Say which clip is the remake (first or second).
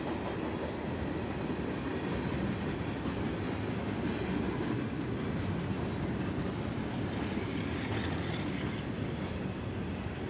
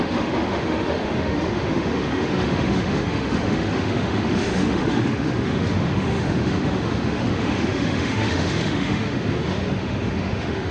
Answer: second